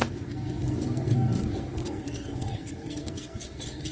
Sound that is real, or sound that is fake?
fake